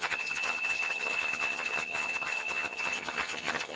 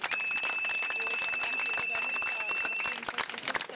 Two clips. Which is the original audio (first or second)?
second